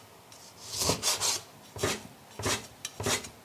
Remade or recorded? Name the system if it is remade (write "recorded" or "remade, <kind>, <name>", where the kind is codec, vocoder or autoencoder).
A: recorded